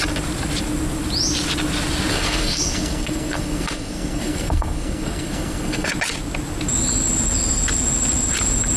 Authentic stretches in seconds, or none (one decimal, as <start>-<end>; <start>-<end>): 0.0-2.1; 5.9-8.8